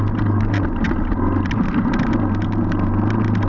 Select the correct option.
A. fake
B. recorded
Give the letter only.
B